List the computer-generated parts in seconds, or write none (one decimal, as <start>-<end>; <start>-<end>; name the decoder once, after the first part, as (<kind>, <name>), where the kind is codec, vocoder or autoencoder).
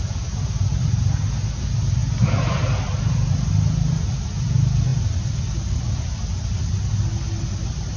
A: none